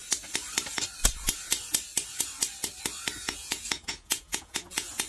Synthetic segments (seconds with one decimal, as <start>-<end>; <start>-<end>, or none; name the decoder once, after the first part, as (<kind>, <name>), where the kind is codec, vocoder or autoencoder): 3.1-5.1 (vocoder, Vocos)